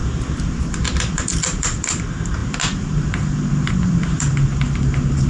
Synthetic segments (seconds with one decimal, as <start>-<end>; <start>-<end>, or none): 0.0-2.0; 2.4-4.6